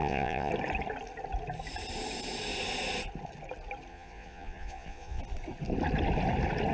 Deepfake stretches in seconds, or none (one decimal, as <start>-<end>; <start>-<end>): 0.0-0.5; 3.9-5.2